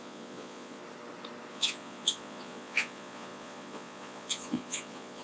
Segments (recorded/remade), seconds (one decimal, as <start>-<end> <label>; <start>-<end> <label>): 0.0-0.8 remade; 0.8-1.5 recorded; 1.5-5.2 remade